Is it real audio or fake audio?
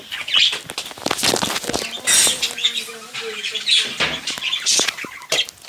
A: real